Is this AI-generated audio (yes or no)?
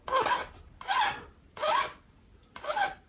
no